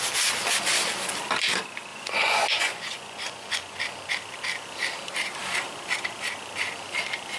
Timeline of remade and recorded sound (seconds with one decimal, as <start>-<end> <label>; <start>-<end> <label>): 0.0-1.9 recorded; 1.9-3.8 remade; 3.8-7.4 recorded

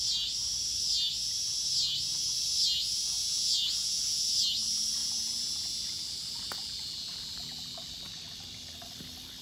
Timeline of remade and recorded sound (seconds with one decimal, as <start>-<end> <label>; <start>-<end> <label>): 0.0-3.2 recorded; 3.2-3.9 remade; 3.9-5.0 recorded; 5.0-6.0 remade; 6.0-9.4 recorded